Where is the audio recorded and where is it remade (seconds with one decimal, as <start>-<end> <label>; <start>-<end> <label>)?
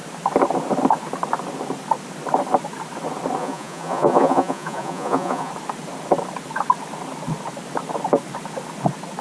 0.0-3.4 recorded; 3.4-5.5 remade; 5.5-9.2 recorded